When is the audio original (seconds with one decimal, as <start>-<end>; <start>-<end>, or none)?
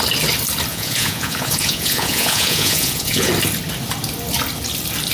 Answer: 0.0-0.7; 3.3-5.1